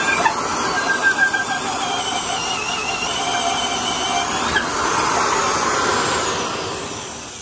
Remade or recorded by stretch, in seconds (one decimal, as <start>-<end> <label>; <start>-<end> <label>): 0.0-0.5 recorded; 0.5-3.6 remade; 3.6-7.4 recorded